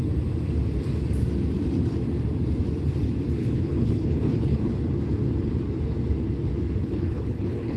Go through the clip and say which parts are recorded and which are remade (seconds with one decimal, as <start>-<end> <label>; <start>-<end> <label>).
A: 0.0-3.4 recorded; 3.4-4.7 remade; 4.7-6.8 recorded; 6.8-7.8 remade